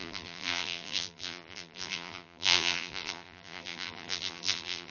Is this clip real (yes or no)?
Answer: no